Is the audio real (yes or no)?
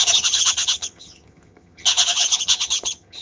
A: no